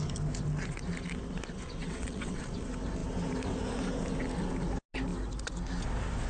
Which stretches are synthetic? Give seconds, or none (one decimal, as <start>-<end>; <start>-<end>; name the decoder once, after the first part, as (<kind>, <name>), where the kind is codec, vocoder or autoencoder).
1.8-2.5 (vocoder, WaveNeXt)